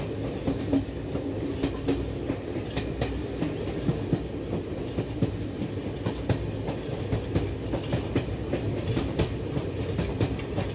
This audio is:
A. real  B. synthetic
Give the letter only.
A